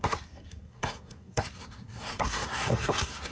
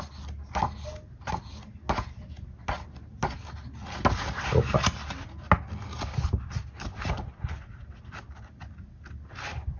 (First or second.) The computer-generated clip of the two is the first